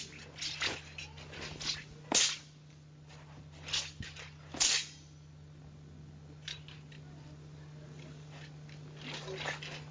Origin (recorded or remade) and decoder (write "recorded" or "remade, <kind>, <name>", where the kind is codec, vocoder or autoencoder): recorded